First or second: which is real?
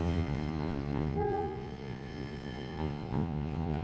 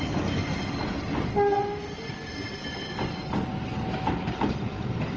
second